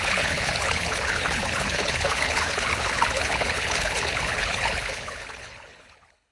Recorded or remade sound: remade